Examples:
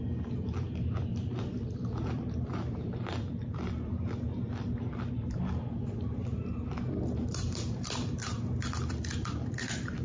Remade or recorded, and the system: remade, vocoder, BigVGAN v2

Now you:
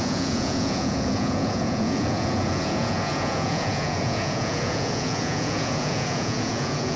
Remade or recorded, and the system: remade, vocoder, Vocos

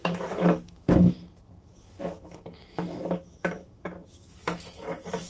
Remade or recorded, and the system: remade, autoencoder, DAC-VAE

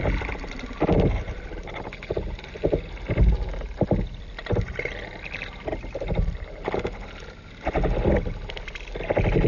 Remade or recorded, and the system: recorded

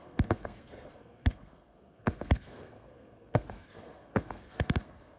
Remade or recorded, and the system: remade, codec, SNAC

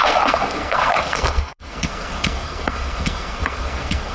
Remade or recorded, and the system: remade, codec, SNAC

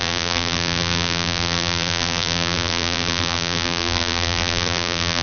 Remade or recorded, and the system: remade, vocoder, BigVGAN v2